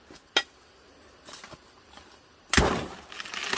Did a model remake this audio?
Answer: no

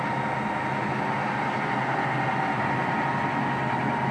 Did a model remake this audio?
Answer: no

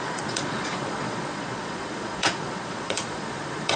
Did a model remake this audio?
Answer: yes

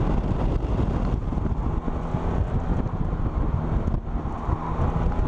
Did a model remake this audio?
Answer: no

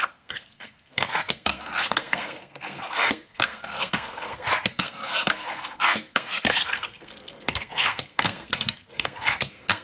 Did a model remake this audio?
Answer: yes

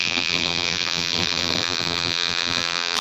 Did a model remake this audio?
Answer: yes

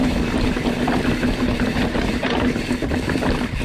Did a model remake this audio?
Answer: no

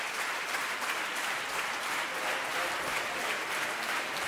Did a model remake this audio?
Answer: no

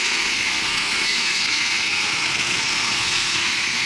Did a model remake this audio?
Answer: yes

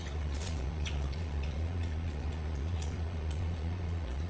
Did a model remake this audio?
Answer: yes